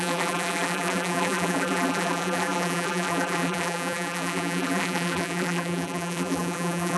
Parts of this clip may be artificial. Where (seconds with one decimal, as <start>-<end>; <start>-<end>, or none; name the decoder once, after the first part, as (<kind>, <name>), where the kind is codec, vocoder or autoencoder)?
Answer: 0.0-7.0 (vocoder, BigVGAN v2)